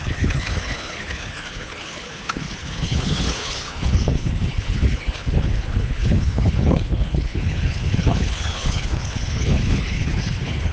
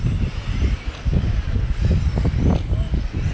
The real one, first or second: second